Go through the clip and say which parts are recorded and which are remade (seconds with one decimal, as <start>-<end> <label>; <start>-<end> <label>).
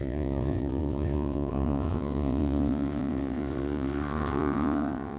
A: 0.0-5.2 remade